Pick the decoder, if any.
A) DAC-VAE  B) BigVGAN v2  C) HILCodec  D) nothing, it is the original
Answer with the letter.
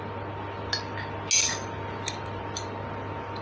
D